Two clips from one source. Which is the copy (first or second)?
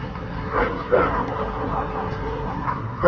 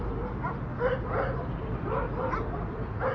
first